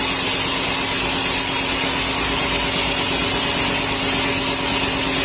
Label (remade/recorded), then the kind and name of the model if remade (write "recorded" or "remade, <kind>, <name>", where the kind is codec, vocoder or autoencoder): recorded